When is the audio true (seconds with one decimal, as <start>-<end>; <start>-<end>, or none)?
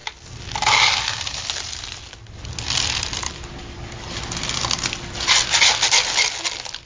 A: 0.0-6.9